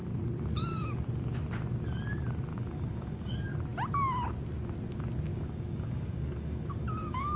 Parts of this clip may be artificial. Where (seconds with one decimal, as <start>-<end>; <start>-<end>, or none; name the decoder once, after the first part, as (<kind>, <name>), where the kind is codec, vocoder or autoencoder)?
2.5-3.3 (codec, DAC); 5.3-7.4

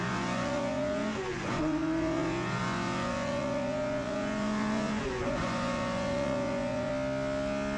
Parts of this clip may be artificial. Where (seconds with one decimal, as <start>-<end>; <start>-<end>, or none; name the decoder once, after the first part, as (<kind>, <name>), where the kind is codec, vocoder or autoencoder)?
0.0-6.9 (vocoder, Vocos)

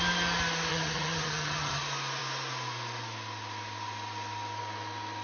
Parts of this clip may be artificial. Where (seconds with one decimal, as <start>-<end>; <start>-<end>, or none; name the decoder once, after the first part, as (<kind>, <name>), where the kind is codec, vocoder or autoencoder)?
0.7-1.8 (vocoder, HiFi-GAN)

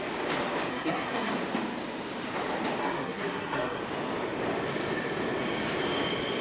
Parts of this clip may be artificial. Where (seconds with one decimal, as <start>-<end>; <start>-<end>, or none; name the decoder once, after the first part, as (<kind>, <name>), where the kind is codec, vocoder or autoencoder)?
0.7-1.3 (codec, SNAC); 2.8-3.8